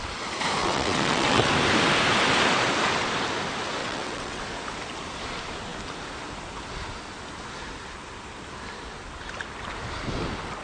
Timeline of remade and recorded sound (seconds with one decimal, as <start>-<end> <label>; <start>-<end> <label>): 0.0-0.6 recorded; 0.6-1.5 remade; 1.5-3.8 recorded; 3.8-4.4 remade; 4.4-10.6 recorded